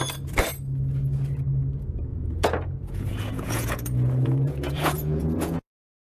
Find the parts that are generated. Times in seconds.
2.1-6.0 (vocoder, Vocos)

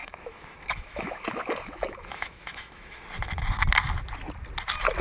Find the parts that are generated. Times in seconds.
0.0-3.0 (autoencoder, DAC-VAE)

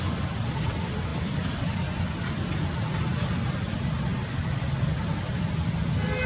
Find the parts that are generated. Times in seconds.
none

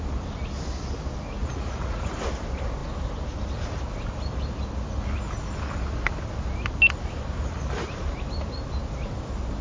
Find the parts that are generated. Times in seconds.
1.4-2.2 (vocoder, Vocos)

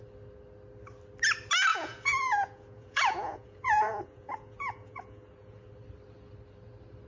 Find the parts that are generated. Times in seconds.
1.7-5.7 (vocoder, Vocos)